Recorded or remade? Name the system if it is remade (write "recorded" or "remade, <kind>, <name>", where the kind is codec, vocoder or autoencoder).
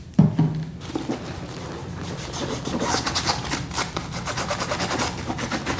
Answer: recorded